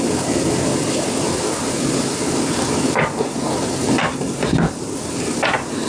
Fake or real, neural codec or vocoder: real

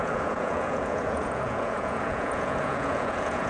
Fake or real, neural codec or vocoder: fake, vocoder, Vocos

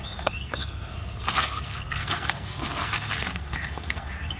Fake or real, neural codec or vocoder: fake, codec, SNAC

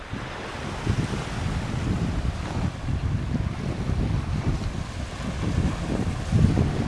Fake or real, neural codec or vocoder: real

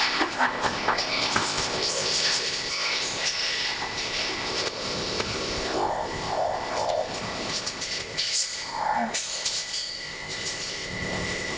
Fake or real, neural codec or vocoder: fake, codec, ZipCodec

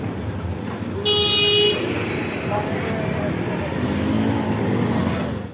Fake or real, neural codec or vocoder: real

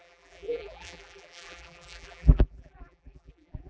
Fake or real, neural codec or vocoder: fake, vocoder, BigVGAN v2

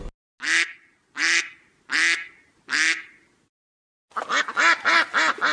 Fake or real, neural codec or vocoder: real